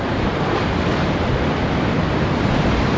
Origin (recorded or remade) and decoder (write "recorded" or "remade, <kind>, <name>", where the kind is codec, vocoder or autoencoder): recorded